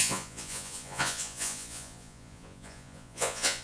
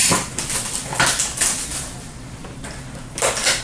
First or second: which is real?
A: second